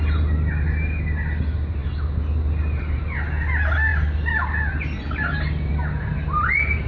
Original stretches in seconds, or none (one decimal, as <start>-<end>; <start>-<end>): 0.0-6.9